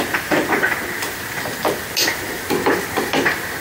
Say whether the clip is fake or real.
real